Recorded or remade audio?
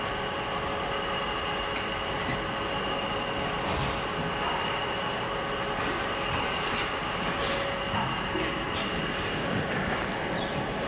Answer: recorded